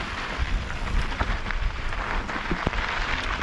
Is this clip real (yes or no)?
no